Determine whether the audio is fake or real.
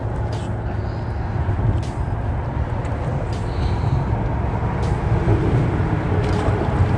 real